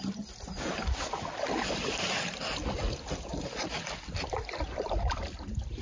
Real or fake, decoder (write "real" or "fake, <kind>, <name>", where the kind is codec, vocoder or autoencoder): real